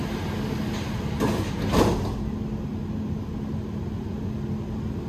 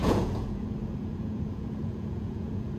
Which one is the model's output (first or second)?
second